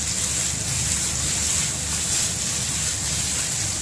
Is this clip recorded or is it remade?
recorded